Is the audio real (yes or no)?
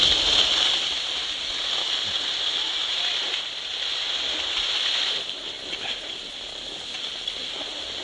yes